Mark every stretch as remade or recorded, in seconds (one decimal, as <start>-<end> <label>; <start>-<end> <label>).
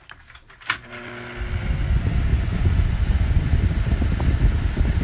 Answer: 0.0-2.3 recorded; 2.3-3.6 remade; 3.6-5.0 recorded